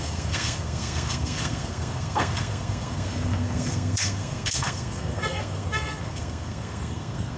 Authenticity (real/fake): fake